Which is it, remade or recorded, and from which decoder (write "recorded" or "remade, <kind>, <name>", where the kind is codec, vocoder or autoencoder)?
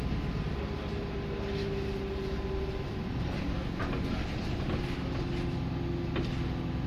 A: recorded